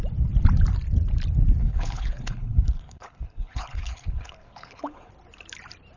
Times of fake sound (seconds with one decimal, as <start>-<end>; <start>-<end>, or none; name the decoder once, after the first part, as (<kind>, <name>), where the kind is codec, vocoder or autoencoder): 1.6-5.1 (codec, HILCodec)